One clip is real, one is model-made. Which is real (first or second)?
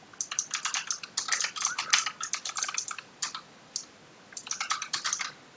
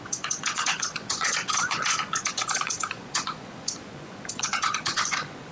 first